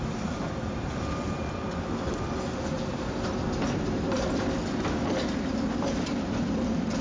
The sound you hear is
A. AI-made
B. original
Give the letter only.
A